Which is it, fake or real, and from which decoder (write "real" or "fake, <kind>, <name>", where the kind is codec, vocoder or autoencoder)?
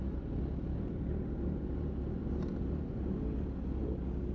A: real